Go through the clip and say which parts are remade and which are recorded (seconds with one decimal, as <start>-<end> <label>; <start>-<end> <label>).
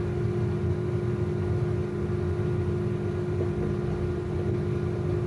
0.0-5.3 recorded